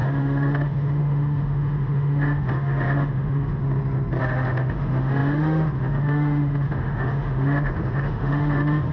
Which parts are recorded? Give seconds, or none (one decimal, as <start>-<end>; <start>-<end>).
3.6-4.2